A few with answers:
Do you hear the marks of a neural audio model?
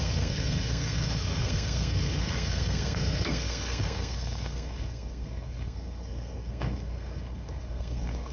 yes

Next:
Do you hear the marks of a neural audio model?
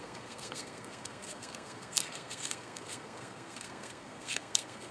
yes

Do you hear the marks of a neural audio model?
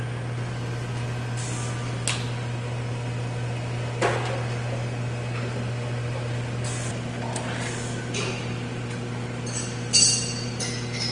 no